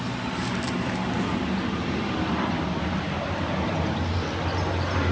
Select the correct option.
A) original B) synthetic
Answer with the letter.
A